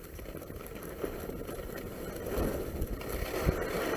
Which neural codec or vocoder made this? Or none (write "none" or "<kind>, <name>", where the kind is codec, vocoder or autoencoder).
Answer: none